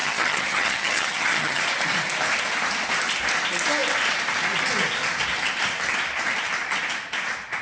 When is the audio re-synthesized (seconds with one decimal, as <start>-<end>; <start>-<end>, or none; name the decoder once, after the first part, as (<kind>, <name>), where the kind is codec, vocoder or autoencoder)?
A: 0.0-1.6 (vocoder, HiFi-GAN)